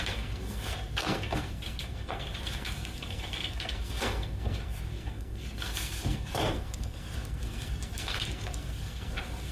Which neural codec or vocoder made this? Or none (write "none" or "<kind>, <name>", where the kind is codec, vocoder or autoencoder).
codec, SNAC